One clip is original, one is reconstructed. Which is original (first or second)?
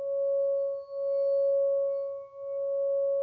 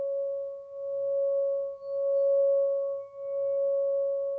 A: first